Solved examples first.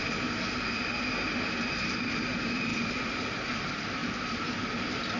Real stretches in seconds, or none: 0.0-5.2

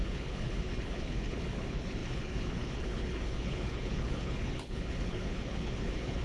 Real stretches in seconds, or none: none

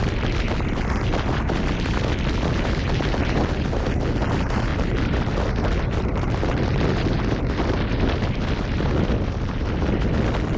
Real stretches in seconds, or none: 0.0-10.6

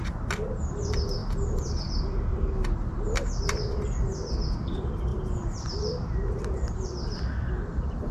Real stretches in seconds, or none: 0.0-8.1